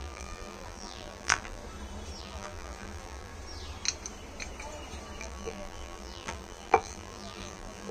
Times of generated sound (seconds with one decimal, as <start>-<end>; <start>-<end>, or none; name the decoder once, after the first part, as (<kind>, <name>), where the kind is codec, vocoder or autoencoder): 0.0-1.6 (vocoder, BigVGAN v2); 2.2-3.3; 5.2-7.9